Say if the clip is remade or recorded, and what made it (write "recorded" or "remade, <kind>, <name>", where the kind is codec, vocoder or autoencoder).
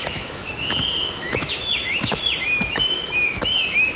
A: remade, autoencoder, DAC-VAE